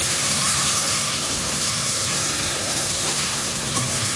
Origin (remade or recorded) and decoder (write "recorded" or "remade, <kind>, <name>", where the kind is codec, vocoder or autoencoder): remade, codec, SNAC